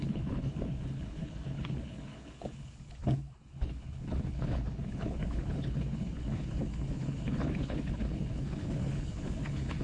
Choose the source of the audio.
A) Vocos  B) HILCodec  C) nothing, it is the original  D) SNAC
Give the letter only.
B